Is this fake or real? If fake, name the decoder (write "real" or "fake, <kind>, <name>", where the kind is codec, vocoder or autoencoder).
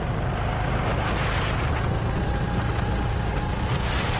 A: real